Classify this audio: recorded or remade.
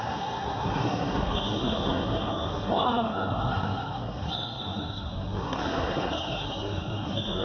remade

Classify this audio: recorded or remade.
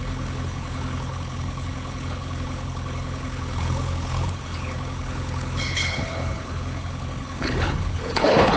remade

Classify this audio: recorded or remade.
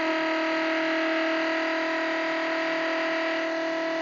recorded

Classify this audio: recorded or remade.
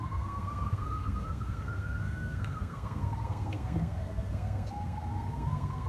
remade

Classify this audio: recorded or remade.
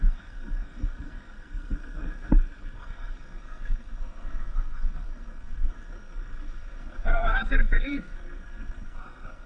remade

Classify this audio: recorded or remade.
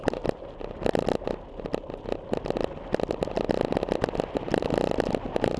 recorded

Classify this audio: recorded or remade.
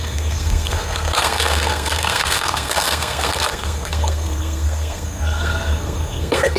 remade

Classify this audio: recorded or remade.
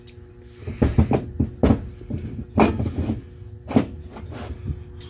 recorded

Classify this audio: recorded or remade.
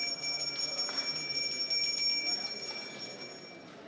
recorded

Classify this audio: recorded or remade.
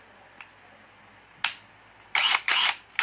recorded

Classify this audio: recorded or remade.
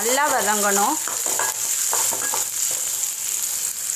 recorded